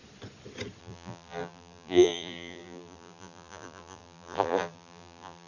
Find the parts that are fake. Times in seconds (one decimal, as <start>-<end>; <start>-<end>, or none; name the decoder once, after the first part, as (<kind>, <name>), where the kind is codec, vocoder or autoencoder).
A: 0.8-5.5 (vocoder, BigVGAN v2)